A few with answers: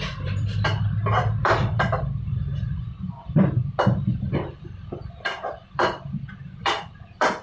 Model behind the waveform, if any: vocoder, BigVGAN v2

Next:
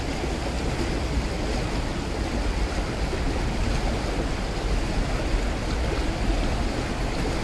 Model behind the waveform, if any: none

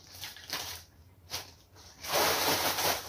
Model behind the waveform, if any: vocoder, BigVGAN v2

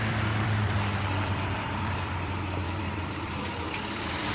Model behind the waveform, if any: vocoder, BigVGAN v2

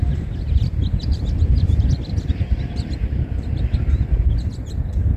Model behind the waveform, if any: none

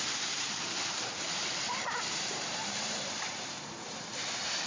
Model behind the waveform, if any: vocoder, BigVGAN v2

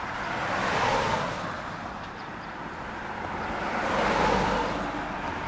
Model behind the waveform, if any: none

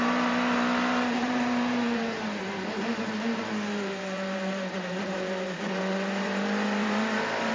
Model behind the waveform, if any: vocoder, BigVGAN v2